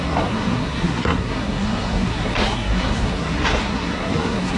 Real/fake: fake